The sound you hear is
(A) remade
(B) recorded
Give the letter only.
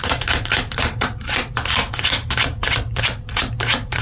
B